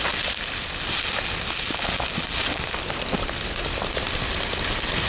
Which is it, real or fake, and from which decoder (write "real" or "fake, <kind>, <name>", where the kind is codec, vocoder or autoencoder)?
real